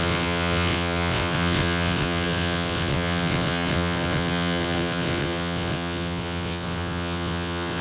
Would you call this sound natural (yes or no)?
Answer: no